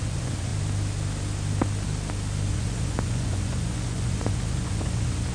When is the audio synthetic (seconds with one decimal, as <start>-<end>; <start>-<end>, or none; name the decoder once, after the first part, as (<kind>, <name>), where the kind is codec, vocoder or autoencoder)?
0.0-0.5 (vocoder, Vocos); 2.5-5.3